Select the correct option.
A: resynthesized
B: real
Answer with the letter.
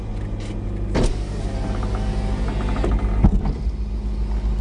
B